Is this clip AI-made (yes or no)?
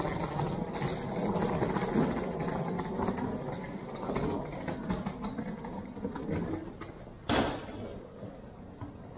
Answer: no